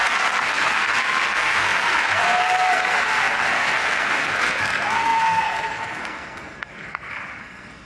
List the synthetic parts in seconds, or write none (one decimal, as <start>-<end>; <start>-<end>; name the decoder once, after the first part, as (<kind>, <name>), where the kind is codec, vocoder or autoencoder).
0.0-7.9 (codec, SNAC)